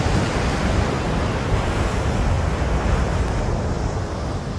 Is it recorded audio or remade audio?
recorded